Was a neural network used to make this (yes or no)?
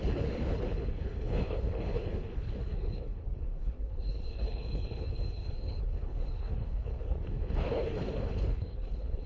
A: yes